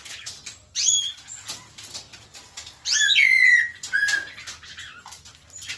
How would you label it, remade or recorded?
recorded